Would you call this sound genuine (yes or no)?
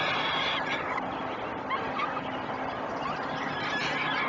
yes